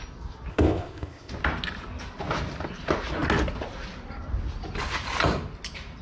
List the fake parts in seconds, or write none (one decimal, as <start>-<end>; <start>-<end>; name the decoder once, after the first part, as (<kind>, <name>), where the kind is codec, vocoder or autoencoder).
0.5-1.3 (codec, ZipCodec)